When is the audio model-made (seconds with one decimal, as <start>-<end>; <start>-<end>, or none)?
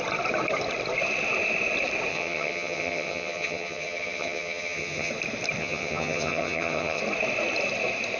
2.1-5.1; 5.6-7.0